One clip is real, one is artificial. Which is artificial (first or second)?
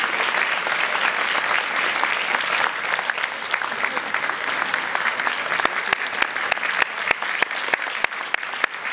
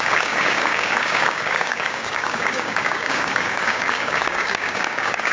second